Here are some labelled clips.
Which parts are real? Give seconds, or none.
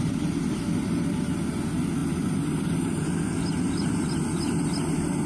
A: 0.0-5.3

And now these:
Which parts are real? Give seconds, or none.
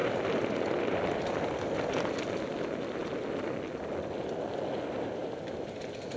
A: 1.9-5.2; 5.8-6.2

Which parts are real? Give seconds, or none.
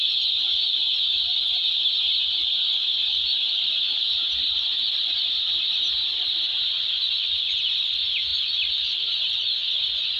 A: 0.0-0.5; 1.6-2.8; 6.4-10.2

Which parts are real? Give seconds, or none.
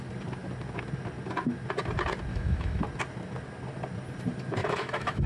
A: 0.0-2.3; 2.8-4.6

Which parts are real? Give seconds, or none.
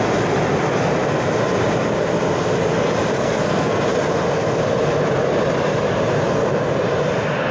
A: 0.0-3.1; 3.8-7.5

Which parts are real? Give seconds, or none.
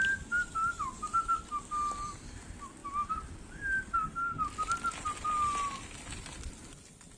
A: 0.0-7.2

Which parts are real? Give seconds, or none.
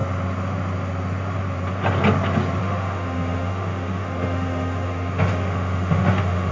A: 0.0-2.6